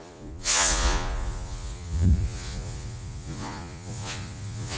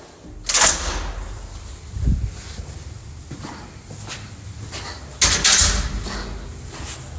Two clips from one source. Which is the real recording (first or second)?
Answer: second